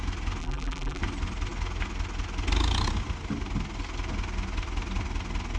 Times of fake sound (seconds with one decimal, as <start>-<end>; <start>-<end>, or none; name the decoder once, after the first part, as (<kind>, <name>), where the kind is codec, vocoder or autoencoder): 0.4-1.0 (vocoder, BigVGAN v2)

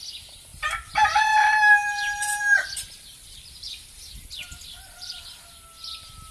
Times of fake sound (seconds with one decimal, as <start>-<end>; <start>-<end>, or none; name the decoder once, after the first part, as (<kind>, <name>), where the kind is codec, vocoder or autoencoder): 0.5-4.1 (vocoder, BigVGAN v2)

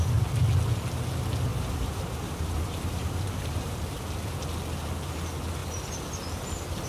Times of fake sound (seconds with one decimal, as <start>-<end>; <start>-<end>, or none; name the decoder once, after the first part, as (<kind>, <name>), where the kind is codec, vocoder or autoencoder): 1.5-4.0 (vocoder, BigVGAN v2); 5.6-6.1

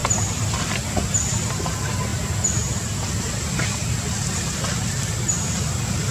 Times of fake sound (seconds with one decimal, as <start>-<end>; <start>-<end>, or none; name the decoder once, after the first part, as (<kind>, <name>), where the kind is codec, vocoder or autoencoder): none

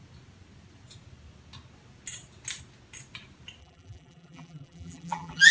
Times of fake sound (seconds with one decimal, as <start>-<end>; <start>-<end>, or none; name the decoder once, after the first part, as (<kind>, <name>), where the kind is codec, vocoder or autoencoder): 3.6-5.5 (vocoder, BigVGAN v2)

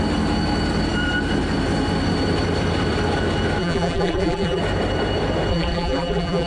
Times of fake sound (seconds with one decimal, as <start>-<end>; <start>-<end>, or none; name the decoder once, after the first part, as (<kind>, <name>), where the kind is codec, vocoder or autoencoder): 3.6-4.6 (vocoder, BigVGAN v2); 5.5-6.5

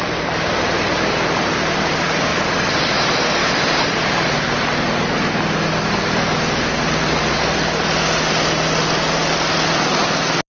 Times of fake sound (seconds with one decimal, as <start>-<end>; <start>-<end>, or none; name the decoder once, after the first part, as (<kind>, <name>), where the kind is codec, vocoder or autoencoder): 2.3-2.8 (vocoder, BigVGAN v2)